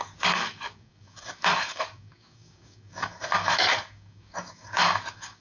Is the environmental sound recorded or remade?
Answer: remade